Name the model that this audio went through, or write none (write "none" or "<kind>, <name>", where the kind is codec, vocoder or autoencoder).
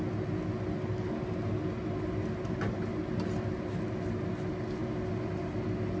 none